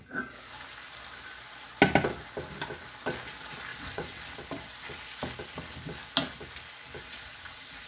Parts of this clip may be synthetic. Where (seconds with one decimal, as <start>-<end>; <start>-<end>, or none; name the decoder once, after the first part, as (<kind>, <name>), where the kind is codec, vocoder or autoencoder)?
3.7-4.2 (vocoder, WaveNeXt); 7.0-7.9